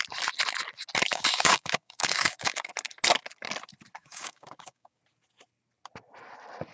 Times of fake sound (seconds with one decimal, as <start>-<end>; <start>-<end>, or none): 1.1-2.7; 4.0-5.0